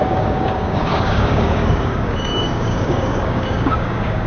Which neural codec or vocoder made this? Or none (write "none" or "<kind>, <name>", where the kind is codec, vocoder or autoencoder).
codec, DAC